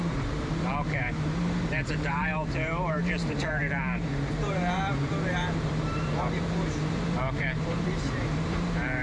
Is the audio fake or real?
fake